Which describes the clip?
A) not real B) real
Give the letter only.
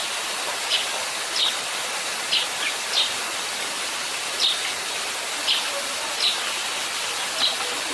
B